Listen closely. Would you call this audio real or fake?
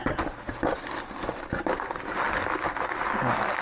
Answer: real